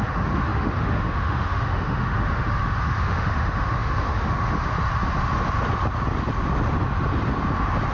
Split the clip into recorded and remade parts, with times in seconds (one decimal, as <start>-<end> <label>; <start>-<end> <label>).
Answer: 0.0-4.7 remade; 4.7-7.9 recorded

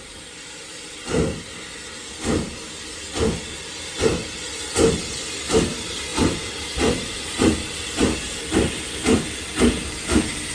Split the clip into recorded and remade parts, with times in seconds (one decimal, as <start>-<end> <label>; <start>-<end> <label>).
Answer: 0.0-10.5 recorded

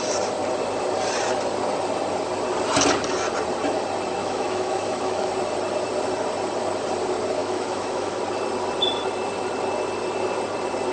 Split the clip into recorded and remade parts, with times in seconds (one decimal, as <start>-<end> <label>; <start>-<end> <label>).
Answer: 0.0-4.2 recorded; 4.2-5.3 remade; 5.3-7.4 recorded; 7.4-8.2 remade; 8.2-10.9 recorded

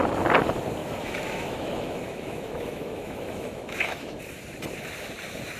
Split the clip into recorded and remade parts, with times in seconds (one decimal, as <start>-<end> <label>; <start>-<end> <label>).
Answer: 0.0-0.8 recorded; 0.8-4.2 remade; 4.2-5.6 recorded

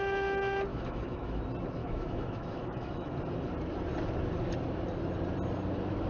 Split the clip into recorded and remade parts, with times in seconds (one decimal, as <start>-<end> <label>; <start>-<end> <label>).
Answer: 0.0-0.7 recorded; 0.7-1.4 remade; 1.4-1.8 recorded; 1.8-3.1 remade; 3.1-6.1 recorded

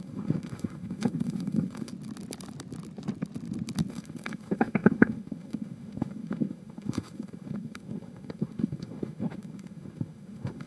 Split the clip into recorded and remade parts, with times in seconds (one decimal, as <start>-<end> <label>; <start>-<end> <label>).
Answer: 0.0-1.9 remade; 1.9-3.9 recorded; 3.9-10.7 remade

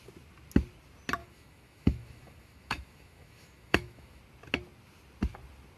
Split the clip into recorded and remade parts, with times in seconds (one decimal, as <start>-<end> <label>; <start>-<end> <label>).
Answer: 0.0-1.2 recorded; 1.2-4.2 remade; 4.2-5.8 recorded